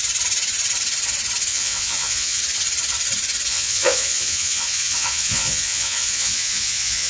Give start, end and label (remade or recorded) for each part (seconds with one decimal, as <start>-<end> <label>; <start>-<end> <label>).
0.0-1.5 recorded; 1.5-2.4 remade; 2.4-3.5 recorded; 3.5-7.1 remade